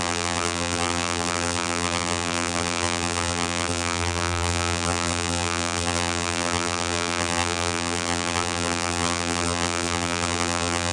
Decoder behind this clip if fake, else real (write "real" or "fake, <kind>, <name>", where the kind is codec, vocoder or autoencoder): fake, vocoder, BigVGAN v2